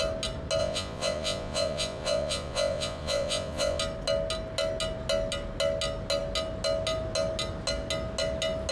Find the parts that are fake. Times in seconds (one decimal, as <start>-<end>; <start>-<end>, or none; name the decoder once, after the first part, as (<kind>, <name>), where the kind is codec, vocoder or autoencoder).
0.6-3.8 (vocoder, Vocos)